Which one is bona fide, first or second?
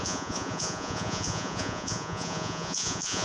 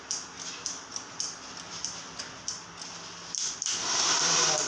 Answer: second